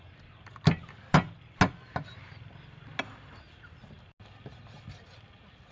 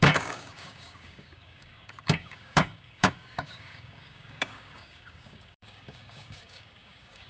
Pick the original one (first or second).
first